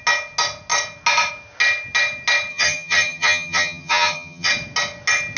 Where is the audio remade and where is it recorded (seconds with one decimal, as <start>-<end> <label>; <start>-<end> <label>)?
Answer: 0.0-2.5 recorded; 2.5-4.5 remade; 4.5-5.4 recorded